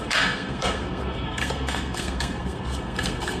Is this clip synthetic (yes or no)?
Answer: yes